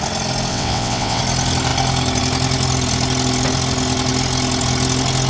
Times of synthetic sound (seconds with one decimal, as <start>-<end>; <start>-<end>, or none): 0.5-1.2